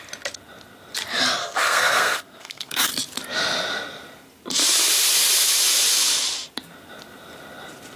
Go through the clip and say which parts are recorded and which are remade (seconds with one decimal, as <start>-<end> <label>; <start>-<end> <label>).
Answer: 0.0-1.4 recorded; 1.4-2.9 remade; 2.9-8.0 recorded

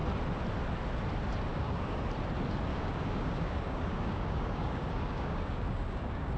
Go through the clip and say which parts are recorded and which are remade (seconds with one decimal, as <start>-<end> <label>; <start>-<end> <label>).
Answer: 0.0-1.5 recorded; 1.5-2.0 remade; 2.0-2.7 recorded; 2.7-6.4 remade

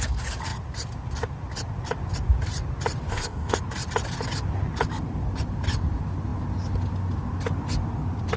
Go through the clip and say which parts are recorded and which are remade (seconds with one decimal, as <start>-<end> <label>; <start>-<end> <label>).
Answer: 0.0-3.1 recorded; 3.1-3.6 remade; 3.6-8.4 recorded

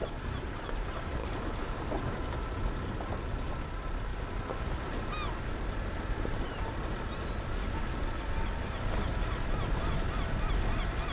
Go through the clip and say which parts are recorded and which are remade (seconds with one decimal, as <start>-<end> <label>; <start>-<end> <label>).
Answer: 0.0-1.2 recorded; 1.2-1.8 remade; 1.8-11.1 recorded